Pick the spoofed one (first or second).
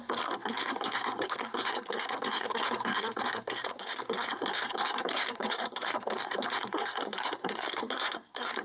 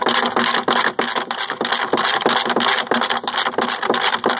first